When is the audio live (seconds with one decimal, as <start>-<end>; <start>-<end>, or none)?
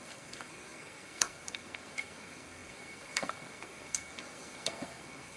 none